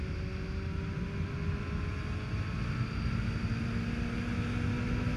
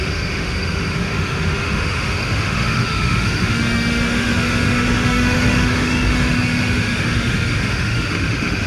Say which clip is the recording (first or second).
first